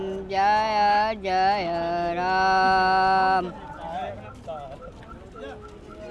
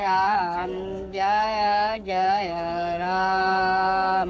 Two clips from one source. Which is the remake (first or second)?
second